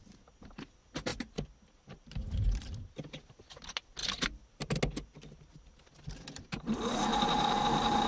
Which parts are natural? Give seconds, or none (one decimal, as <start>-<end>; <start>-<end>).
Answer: 0.0-1.1; 2.9-4.0; 4.8-7.1